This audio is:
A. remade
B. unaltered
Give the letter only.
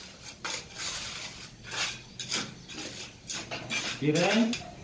A